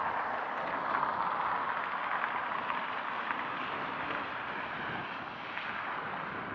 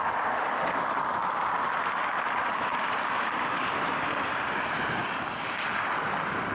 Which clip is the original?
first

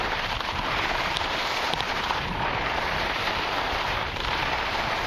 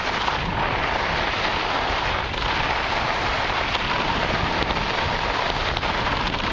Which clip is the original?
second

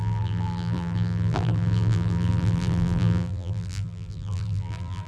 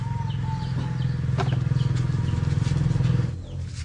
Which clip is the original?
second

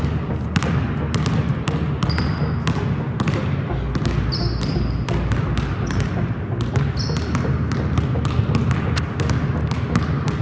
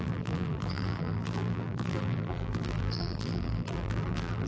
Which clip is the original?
first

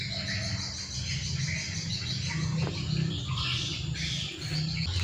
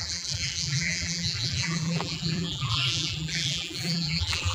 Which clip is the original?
first